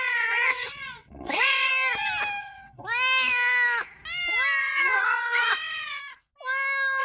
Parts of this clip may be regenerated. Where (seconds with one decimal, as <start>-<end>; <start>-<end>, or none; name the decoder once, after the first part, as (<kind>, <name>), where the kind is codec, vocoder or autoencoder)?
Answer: 0.0-1.7 (vocoder, WaveNeXt); 2.4-2.8; 4.6-6.0

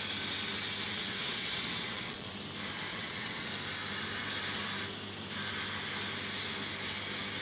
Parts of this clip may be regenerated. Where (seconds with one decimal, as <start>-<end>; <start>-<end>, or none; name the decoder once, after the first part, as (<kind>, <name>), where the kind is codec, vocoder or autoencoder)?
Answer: 0.9-2.3 (vocoder, WaveNeXt); 2.9-3.5

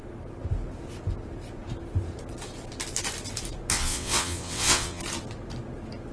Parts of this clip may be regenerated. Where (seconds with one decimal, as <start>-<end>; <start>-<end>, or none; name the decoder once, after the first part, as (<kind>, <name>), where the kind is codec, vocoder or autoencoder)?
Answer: 3.7-5.0 (vocoder, WaveNeXt)

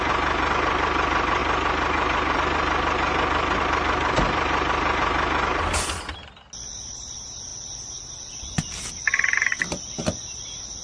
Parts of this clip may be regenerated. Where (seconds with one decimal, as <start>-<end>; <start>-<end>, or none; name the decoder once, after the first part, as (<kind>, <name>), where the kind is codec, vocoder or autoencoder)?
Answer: none

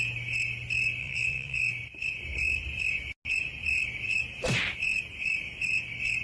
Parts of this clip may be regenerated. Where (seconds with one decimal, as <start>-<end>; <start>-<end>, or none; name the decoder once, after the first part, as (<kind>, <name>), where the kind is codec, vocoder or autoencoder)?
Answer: 1.0-1.6 (vocoder, WaveNeXt)

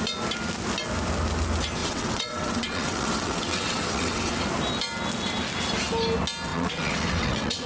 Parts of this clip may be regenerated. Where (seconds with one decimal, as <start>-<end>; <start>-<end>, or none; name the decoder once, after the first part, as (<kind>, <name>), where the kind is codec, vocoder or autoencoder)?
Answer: 1.8-4.3 (vocoder, WaveNeXt); 6.5-7.7

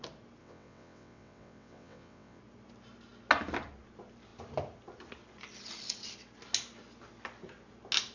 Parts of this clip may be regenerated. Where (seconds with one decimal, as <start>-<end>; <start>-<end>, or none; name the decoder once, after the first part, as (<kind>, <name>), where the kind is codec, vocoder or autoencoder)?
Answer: 0.4-2.4 (vocoder, WaveNeXt)

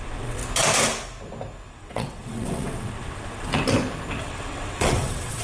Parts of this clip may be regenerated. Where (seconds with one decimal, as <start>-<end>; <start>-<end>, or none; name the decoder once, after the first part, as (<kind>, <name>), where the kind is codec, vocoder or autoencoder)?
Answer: 0.0-0.4 (vocoder, WaveNeXt); 1.7-3.5; 4.2-5.4